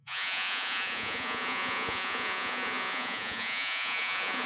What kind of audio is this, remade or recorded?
remade